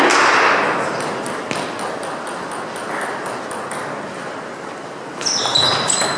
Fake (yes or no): no